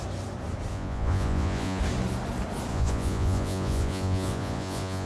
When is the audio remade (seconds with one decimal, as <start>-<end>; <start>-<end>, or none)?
0.7-1.8; 2.7-5.1